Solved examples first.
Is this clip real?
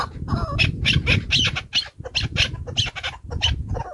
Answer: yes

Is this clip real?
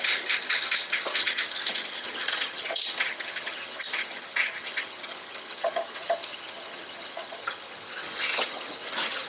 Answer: no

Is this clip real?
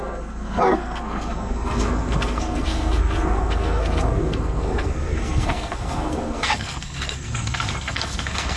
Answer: no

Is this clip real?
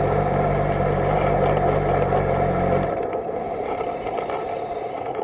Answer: yes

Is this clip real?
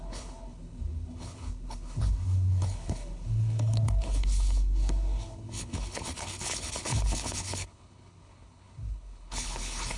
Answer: no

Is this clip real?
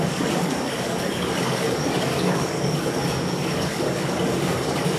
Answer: no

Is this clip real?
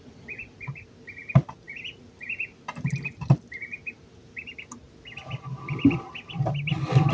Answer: yes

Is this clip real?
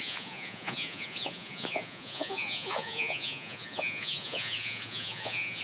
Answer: no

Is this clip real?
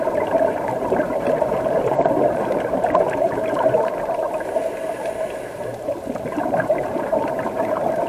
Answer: no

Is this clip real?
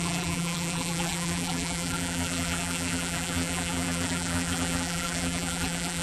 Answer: no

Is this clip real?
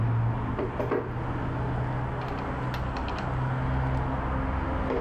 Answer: yes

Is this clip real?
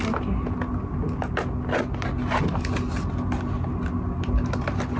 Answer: yes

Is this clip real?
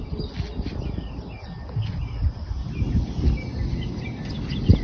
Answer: yes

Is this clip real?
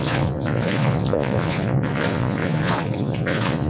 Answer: no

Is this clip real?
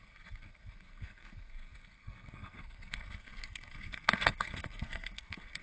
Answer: no